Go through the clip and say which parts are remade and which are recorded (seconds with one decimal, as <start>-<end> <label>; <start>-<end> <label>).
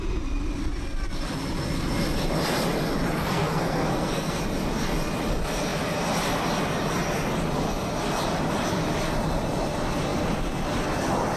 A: 0.0-3.2 recorded; 3.2-4.4 remade; 4.4-11.4 recorded